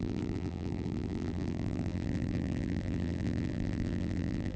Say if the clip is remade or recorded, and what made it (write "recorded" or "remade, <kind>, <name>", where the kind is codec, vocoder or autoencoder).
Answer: remade, vocoder, BigVGAN v2